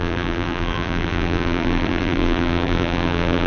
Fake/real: fake